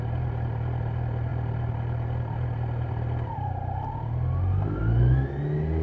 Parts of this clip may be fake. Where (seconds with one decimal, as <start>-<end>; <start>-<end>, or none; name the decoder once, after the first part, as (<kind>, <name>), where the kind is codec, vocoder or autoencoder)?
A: none

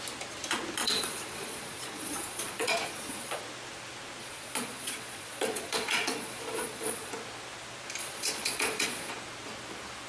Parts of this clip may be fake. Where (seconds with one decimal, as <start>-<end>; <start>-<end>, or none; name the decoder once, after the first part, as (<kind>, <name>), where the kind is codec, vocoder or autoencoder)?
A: 0.8-3.4 (vocoder, Vocos); 4.2-7.1; 8.0-9.1

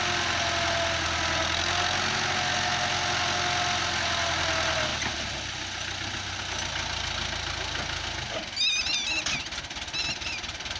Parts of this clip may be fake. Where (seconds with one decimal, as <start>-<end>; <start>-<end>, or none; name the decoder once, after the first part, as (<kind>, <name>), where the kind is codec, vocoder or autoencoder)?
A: none

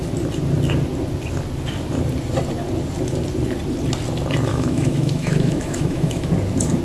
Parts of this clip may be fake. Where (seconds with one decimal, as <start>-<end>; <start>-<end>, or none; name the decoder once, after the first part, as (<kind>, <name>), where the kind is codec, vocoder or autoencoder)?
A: 4.5-6.3 (autoencoder, DAC-VAE)

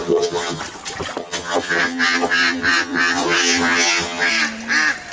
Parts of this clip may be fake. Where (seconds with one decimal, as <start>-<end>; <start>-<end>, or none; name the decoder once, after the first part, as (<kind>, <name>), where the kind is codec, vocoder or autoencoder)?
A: 0.0-0.6 (vocoder, HiFi-GAN); 1.2-4.3

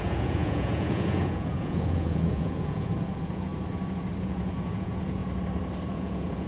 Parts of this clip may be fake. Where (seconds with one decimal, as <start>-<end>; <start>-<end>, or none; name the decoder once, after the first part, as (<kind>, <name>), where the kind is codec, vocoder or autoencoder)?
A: 0.0-3.5 (vocoder, Vocos); 4.2-5.2; 5.9-6.5